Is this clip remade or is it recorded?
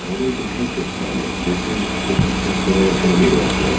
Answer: recorded